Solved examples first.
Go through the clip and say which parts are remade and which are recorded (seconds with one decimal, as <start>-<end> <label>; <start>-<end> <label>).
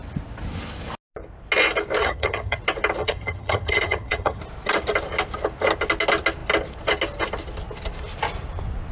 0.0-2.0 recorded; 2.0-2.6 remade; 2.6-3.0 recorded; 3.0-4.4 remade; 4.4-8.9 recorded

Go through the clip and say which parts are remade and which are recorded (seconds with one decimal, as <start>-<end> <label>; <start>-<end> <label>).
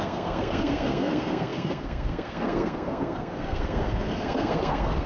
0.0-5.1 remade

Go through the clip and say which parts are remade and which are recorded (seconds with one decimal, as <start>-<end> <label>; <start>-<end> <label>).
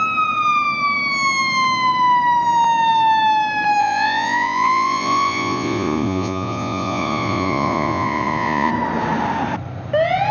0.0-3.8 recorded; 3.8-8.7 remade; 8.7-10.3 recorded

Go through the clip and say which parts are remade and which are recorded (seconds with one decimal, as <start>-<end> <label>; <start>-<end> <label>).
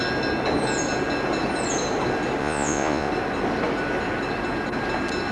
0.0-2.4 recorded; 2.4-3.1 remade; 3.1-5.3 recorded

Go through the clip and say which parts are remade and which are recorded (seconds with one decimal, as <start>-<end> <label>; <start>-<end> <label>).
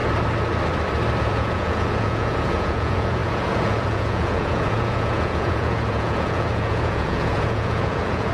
0.0-1.2 recorded; 1.2-8.3 remade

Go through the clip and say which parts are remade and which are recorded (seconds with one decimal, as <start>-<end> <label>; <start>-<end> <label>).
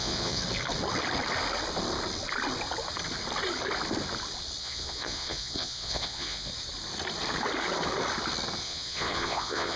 0.0-0.4 remade; 0.4-4.6 recorded; 4.6-6.5 remade; 6.5-8.6 recorded; 8.6-9.8 remade